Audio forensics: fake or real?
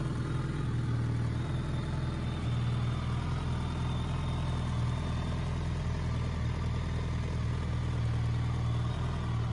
real